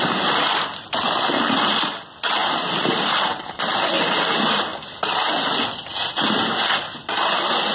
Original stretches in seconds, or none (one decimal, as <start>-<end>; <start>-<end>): 0.0-2.4; 3.6-7.7